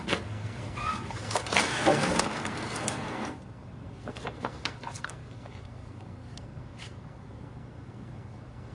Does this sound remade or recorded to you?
remade